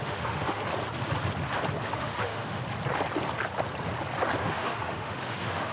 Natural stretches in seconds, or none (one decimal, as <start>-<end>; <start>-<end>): 0.6-2.0; 2.6-4.4